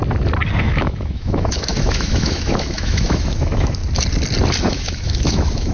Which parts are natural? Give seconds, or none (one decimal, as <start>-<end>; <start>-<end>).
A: 0.0-0.6; 3.8-4.6